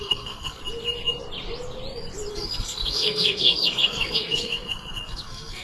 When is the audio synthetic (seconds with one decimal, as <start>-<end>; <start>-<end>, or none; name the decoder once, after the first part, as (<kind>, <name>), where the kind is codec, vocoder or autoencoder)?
0.0-0.6 (codec, SNAC); 2.3-5.6